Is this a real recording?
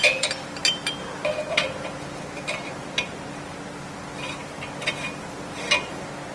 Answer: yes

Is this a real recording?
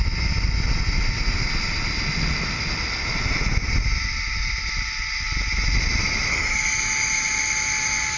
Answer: yes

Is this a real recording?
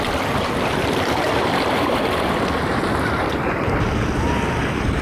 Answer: yes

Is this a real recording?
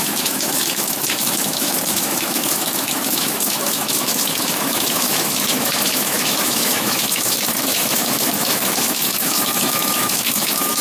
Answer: no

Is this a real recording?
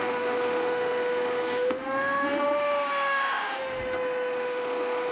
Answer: no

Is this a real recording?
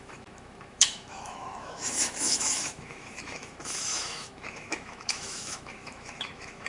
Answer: no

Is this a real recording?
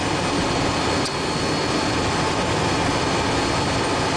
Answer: yes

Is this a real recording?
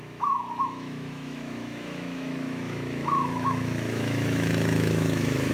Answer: no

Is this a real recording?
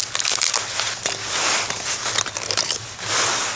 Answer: yes